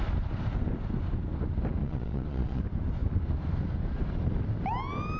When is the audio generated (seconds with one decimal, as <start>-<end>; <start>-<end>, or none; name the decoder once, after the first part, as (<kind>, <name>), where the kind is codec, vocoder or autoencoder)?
1.8-2.6 (vocoder, Vocos)